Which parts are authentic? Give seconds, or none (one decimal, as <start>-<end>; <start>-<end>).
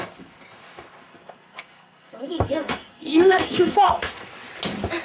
0.0-1.1; 4.1-5.0